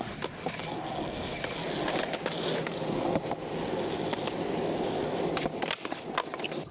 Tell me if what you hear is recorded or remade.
recorded